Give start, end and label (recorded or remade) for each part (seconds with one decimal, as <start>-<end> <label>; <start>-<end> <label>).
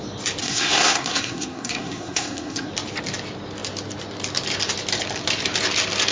0.0-0.4 recorded; 0.4-2.7 remade; 2.7-6.1 recorded